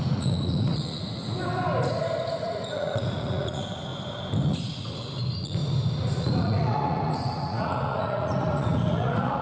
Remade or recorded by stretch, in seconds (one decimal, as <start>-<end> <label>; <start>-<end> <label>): 0.0-1.2 remade; 1.2-2.4 recorded; 2.4-3.9 remade; 3.9-4.4 recorded; 4.4-5.6 remade; 5.6-6.2 recorded; 6.2-9.4 remade